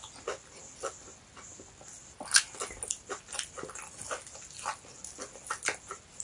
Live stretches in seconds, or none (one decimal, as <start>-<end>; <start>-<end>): 0.0-6.2